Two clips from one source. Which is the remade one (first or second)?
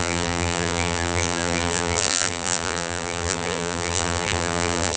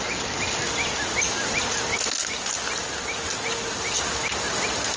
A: first